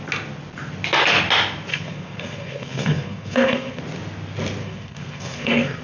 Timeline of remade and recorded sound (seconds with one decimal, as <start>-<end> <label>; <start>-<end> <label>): 0.0-1.7 recorded; 1.7-3.8 remade; 3.8-4.6 recorded; 4.6-5.8 remade